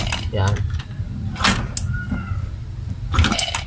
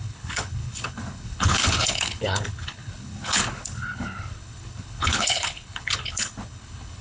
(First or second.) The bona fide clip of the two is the first